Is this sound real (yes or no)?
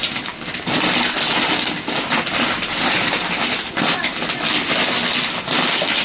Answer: yes